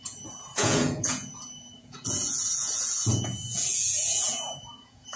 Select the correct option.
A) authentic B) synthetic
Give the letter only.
B